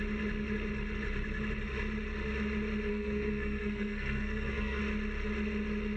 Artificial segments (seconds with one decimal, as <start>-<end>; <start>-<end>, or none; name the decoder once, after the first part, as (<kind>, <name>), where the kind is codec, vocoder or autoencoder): 2.9-4.8 (codec, SNAC)